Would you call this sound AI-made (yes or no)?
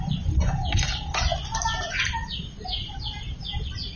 no